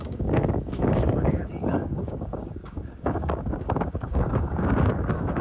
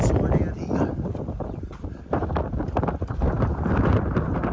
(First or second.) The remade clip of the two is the first